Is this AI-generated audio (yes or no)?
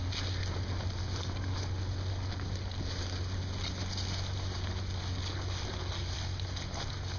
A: no